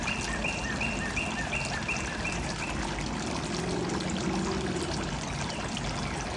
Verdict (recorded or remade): recorded